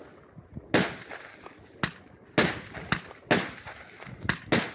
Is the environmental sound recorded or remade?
recorded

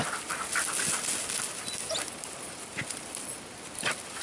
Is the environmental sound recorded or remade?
recorded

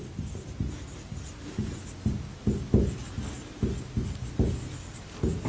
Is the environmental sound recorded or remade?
recorded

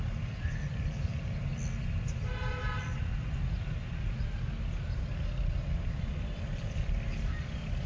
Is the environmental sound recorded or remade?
recorded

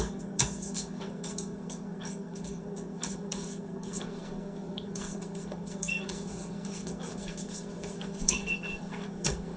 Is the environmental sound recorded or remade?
remade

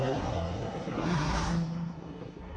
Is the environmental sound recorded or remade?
remade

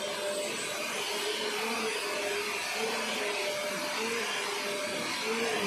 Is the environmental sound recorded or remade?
recorded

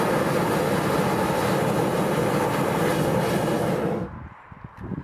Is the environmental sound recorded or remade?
recorded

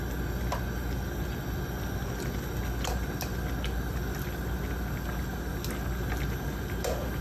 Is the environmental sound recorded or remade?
recorded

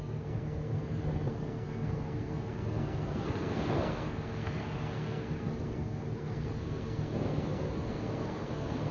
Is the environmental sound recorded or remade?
remade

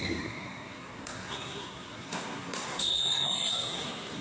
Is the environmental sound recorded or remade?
remade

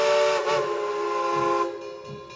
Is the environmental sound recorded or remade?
recorded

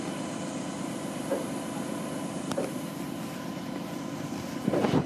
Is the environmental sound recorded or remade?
recorded